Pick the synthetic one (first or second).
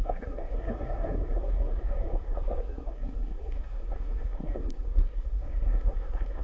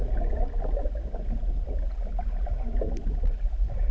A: first